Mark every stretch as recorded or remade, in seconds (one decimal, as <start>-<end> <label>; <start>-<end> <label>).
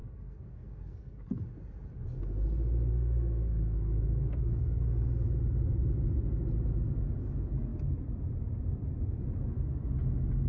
0.0-1.4 remade; 1.4-2.9 recorded; 2.9-5.1 remade; 5.1-10.5 recorded